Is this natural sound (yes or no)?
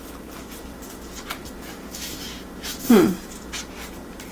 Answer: yes